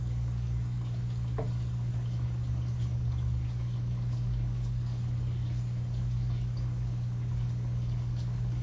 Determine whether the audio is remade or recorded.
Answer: remade